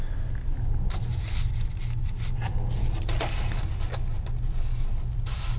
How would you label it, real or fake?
real